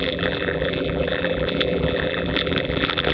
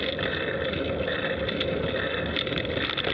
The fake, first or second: first